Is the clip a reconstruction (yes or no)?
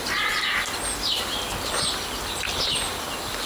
no